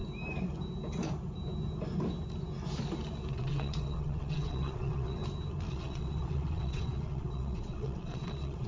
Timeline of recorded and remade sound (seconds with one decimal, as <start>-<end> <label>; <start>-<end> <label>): 0.0-3.3 recorded; 3.3-5.2 remade; 5.2-5.7 recorded; 5.7-8.7 remade